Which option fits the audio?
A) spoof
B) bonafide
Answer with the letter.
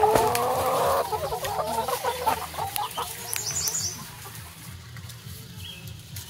B